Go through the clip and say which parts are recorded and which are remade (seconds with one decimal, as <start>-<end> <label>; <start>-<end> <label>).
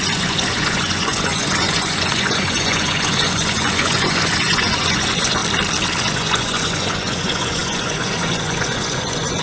0.0-5.4 remade; 5.4-6.0 recorded; 6.0-9.4 remade